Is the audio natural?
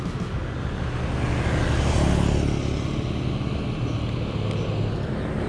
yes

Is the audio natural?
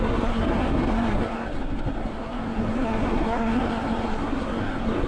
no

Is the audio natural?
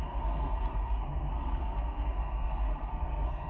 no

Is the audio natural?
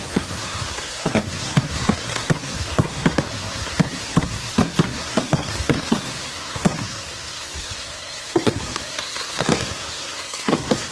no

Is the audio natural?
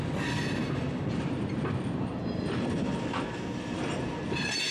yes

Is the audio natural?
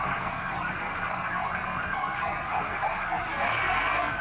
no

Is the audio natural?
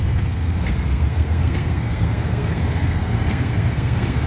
no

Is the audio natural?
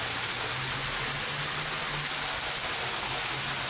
yes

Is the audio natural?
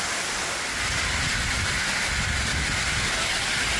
yes